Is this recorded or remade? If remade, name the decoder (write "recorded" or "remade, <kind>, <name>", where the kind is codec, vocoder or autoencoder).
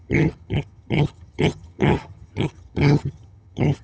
remade, vocoder, HiFi-GAN